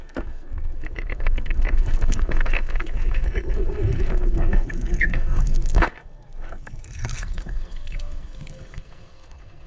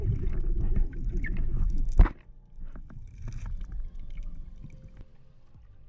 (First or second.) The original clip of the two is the second